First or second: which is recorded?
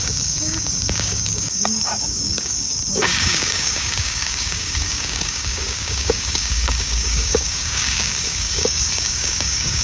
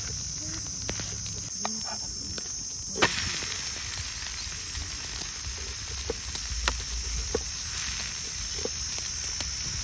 second